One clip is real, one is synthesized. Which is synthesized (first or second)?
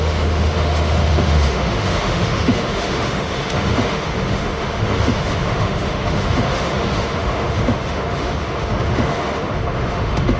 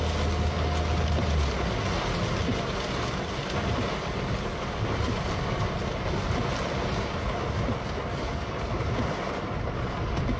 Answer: first